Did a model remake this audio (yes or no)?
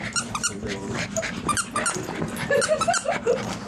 yes